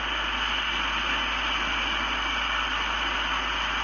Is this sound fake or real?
real